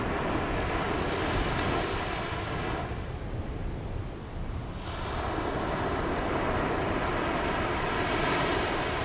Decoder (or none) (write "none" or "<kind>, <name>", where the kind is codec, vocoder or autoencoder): none